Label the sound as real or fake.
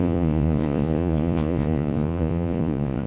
fake